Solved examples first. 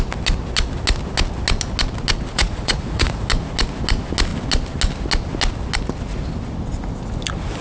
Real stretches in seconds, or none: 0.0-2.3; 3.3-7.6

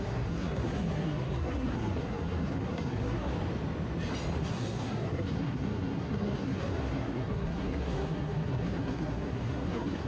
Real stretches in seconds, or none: 3.3-4.4

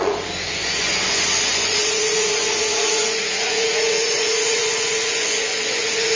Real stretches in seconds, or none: none